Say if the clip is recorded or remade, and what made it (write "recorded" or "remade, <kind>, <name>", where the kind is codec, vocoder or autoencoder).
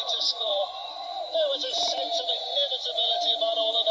remade, vocoder, BigVGAN v2